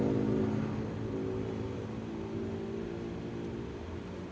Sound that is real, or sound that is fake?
real